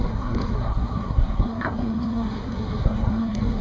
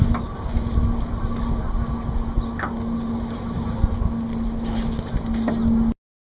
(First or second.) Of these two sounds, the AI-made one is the first